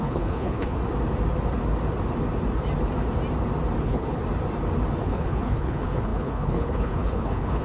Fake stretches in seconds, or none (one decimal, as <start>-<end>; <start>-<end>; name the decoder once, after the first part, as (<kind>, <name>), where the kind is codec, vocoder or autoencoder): 0.0-0.8 (codec, HILCodec); 3.8-4.2; 5.0-7.6